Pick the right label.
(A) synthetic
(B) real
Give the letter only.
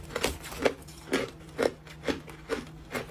B